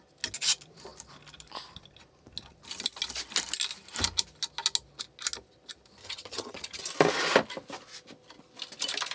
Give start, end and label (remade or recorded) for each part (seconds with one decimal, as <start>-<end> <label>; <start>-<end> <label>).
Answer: 0.0-6.0 recorded; 6.0-6.8 remade; 6.8-9.1 recorded